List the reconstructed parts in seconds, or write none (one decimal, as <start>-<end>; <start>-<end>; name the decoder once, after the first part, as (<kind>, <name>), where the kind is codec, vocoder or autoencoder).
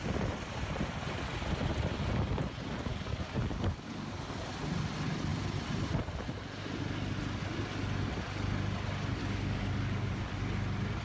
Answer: 2.9-4.1 (codec, DAC); 9.2-10.1